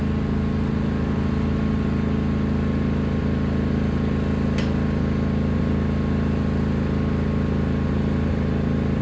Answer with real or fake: real